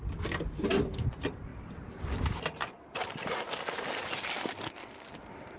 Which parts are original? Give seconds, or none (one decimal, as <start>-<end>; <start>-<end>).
0.0-5.6